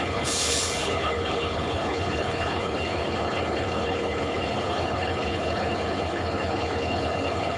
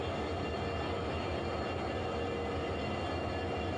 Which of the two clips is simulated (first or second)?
first